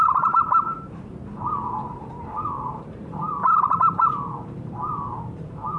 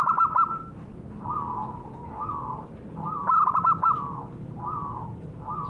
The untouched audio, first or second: second